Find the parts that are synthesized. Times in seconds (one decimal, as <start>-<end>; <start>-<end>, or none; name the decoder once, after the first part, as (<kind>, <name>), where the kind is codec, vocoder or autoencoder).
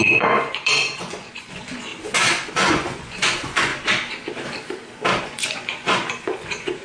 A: 0.0-1.9 (vocoder, Vocos); 2.5-3.7; 5.2-6.8